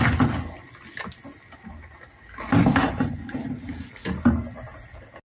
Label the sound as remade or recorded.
recorded